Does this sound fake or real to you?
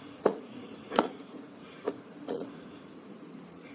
fake